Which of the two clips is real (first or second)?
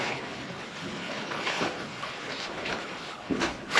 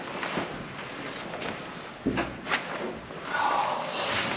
second